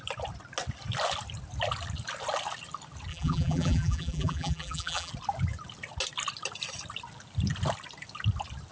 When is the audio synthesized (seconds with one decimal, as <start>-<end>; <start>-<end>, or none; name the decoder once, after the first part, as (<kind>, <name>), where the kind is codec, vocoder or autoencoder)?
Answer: 3.1-5.1 (vocoder, BigVGAN v2)